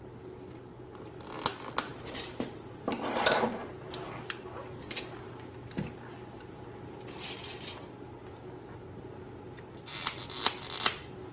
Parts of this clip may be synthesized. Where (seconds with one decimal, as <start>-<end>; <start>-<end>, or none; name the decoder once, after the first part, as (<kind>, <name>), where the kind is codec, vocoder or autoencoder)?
1.9-3.9 (vocoder, BigVGAN v2)

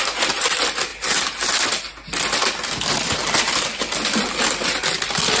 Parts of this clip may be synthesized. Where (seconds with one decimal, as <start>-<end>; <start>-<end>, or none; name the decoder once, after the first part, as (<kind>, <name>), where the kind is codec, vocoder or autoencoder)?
none

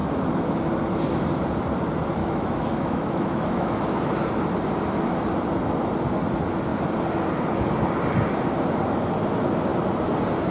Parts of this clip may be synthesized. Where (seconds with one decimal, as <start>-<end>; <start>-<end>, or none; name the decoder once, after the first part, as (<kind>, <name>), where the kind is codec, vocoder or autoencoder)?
2.2-4.3 (autoencoder, DAC-VAE)

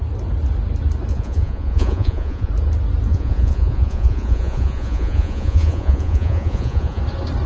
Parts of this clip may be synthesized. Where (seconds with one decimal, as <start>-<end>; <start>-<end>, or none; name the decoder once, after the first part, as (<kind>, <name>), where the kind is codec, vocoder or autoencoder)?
1.1-2.5 (vocoder, Vocos); 3.1-7.0